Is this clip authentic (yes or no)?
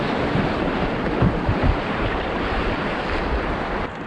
no